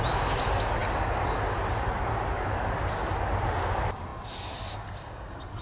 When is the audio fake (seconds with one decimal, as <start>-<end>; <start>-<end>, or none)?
none